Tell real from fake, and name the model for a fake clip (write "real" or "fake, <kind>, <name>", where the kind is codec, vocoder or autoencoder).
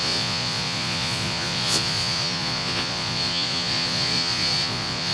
fake, vocoder, Vocos